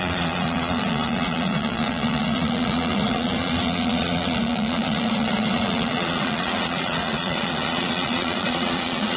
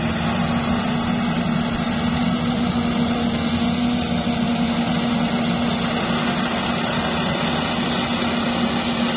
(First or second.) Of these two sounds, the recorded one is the second